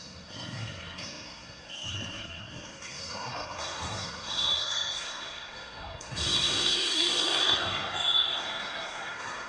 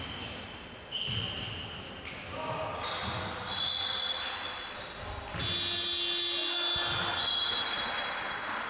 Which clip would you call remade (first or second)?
first